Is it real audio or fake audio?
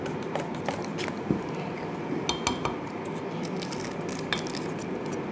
real